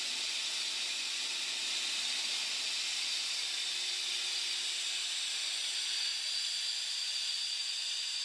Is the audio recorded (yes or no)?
yes